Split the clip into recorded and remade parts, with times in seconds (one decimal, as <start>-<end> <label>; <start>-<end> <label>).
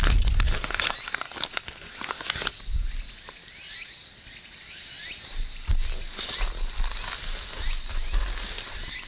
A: 0.0-9.1 recorded